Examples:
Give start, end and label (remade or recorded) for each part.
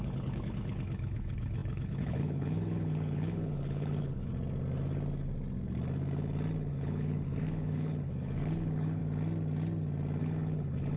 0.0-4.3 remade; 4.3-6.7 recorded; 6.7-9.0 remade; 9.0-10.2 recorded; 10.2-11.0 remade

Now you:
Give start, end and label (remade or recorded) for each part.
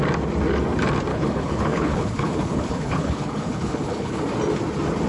0.0-1.1 recorded; 1.1-4.2 remade; 4.2-5.1 recorded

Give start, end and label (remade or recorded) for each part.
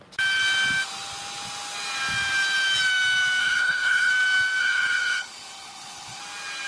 0.0-3.4 recorded; 3.4-4.1 remade; 4.1-4.6 recorded; 4.6-6.2 remade; 6.2-6.7 recorded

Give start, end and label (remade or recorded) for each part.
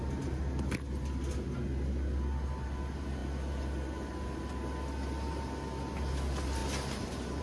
0.0-7.4 recorded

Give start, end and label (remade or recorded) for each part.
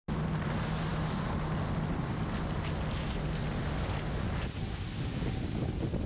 0.0-6.1 recorded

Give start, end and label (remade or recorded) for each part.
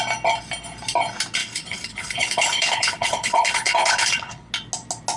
0.0-1.4 recorded; 1.4-4.5 remade; 4.5-5.2 recorded